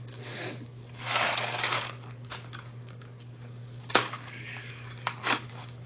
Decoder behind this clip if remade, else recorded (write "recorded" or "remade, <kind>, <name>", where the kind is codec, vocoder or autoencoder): remade, codec, DAC